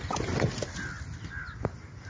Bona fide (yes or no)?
yes